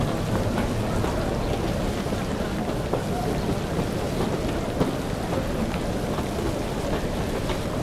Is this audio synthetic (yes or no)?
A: no